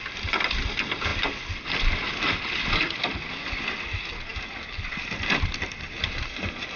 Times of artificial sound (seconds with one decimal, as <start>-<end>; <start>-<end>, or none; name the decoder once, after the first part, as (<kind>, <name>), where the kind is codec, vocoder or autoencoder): none